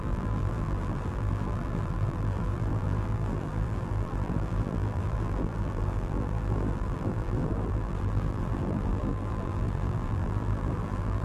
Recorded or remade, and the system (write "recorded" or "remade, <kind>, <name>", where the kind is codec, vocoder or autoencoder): remade, vocoder, BigVGAN v2